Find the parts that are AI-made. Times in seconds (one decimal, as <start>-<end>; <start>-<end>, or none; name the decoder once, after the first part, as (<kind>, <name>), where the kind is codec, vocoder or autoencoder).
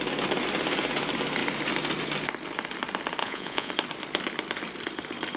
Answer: 3.2-3.7 (vocoder, Vocos)